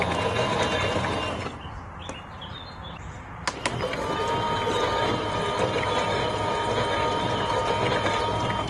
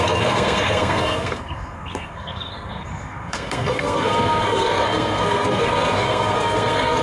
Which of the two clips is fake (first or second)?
second